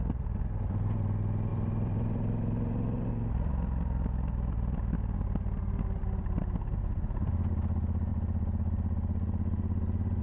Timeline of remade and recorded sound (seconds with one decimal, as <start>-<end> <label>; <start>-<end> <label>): 0.0-1.5 recorded; 1.5-3.1 remade; 3.1-8.1 recorded; 8.1-10.2 remade